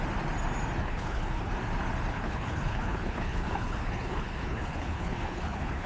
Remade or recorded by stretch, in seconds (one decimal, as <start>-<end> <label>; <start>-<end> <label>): 0.0-0.8 recorded; 0.8-1.5 remade; 1.5-2.1 recorded; 2.1-5.9 remade